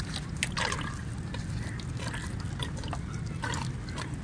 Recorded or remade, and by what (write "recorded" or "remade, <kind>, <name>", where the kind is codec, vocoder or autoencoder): recorded